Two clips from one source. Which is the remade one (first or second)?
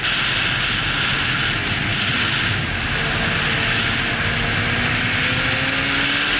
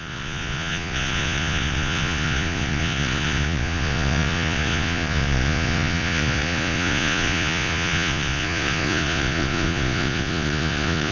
second